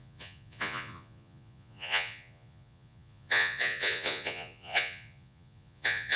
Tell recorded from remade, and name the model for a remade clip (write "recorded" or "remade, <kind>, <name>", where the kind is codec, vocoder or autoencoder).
remade, vocoder, Vocos